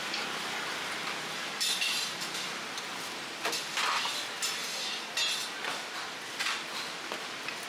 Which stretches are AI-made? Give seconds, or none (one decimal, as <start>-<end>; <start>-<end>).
0.0-3.8; 5.5-7.7